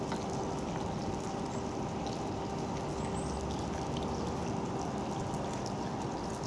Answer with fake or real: real